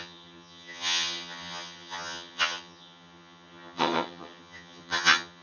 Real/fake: fake